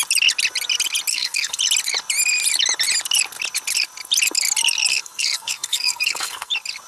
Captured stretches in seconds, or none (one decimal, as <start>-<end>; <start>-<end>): 0.0-1.1; 1.6-4.9; 6.5-6.9